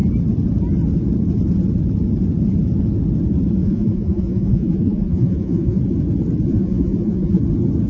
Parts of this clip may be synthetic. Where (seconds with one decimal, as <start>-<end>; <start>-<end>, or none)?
3.6-5.8; 6.5-7.4